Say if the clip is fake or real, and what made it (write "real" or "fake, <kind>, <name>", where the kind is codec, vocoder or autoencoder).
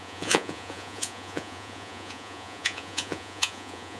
fake, vocoder, Vocos